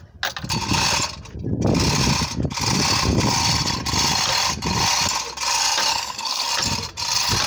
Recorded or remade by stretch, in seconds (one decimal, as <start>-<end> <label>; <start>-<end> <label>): 0.0-5.9 recorded; 5.9-6.5 remade; 6.5-7.5 recorded